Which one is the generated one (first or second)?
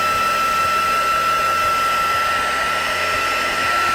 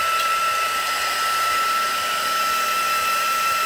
second